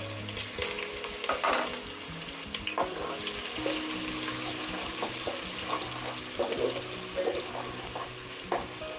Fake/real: real